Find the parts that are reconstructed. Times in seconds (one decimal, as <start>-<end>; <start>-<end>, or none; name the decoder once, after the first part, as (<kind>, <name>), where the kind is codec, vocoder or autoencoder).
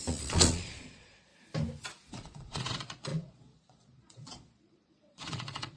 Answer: 0.0-1.3 (vocoder, Vocos); 2.1-5.8